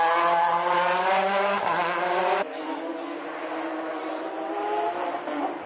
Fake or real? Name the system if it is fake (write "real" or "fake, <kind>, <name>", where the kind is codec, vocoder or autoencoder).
real